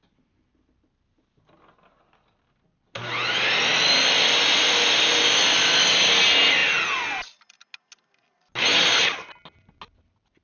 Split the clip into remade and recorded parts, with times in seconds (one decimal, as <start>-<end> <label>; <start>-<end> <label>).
0.0-10.4 recorded